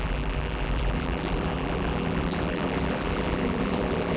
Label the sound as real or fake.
fake